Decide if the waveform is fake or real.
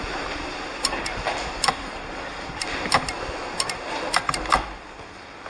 real